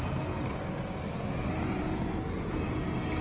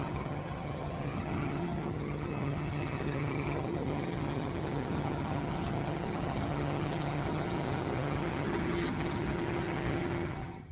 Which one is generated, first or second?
second